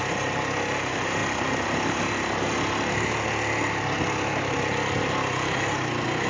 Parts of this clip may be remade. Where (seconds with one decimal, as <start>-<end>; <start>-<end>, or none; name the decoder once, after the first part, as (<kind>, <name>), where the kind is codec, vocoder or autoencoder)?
none